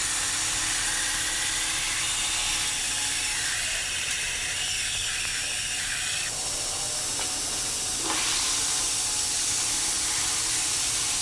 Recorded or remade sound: recorded